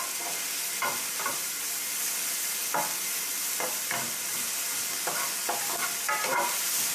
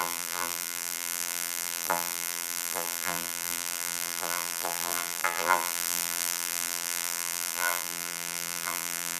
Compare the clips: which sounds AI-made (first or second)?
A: second